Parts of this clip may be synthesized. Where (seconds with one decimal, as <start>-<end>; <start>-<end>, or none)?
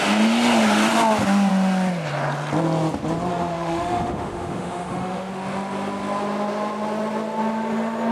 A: 3.3-5.3